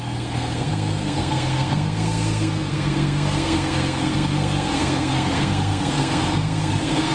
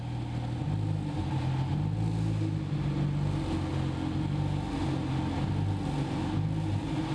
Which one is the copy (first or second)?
first